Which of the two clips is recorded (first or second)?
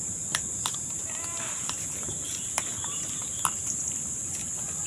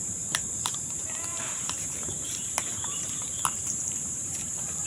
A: first